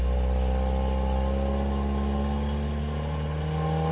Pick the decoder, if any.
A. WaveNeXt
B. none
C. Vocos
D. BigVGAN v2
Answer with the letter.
B